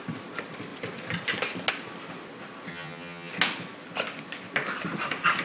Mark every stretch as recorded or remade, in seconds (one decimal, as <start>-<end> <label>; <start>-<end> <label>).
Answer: 0.0-2.7 recorded; 2.7-3.3 remade; 3.3-5.4 recorded